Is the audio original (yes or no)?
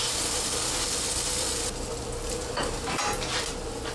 yes